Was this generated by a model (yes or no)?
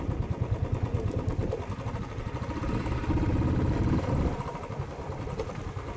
no